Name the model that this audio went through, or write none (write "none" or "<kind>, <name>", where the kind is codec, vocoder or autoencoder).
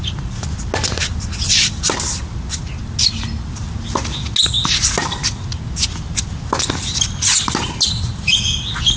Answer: none